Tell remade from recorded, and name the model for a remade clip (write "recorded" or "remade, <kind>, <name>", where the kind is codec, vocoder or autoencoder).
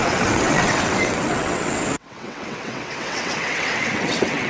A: remade, vocoder, WaveNeXt